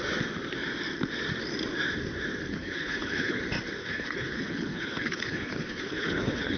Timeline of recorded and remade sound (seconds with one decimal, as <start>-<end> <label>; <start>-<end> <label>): 0.0-2.5 recorded; 2.5-3.4 remade; 3.4-3.8 recorded; 3.8-6.6 remade